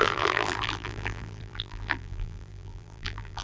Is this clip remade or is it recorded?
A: remade